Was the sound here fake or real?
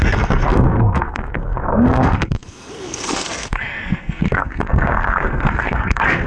fake